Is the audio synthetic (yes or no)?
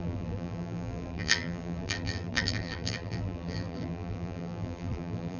yes